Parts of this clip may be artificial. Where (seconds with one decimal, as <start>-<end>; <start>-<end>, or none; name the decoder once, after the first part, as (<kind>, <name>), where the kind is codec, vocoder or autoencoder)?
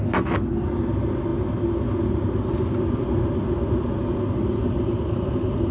none